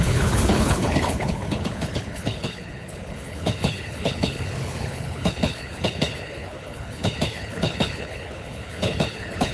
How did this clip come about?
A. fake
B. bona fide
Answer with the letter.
A